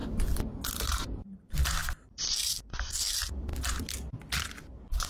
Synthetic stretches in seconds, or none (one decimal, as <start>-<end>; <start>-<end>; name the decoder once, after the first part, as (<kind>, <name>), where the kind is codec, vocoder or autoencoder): 0.8-3.5 (vocoder, BigVGAN v2)